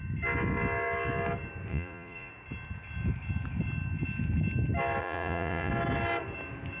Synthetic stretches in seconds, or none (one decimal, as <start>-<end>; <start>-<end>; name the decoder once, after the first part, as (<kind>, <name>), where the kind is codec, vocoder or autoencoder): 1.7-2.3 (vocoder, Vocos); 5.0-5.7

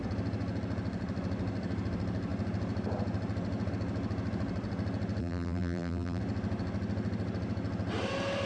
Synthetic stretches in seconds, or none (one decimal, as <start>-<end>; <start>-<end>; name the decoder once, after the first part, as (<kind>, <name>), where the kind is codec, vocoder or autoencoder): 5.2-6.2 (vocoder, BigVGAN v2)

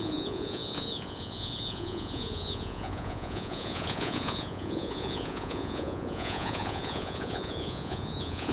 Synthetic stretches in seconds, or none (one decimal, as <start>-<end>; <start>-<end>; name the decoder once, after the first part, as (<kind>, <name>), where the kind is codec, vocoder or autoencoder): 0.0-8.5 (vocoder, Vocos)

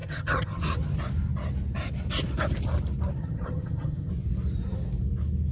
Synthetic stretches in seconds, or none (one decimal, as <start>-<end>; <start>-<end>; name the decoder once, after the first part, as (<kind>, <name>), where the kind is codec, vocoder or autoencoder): 0.0-0.6 (vocoder, HiFi-GAN); 3.2-4.1

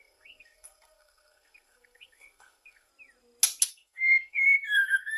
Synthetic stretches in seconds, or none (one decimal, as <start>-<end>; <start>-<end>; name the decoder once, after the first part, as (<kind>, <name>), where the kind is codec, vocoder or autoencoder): 0.0-2.9 (codec, SNAC); 3.7-5.2